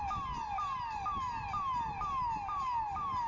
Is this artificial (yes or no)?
no